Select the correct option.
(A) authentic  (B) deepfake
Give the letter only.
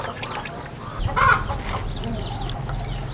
A